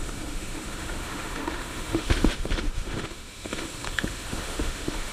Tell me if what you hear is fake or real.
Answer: fake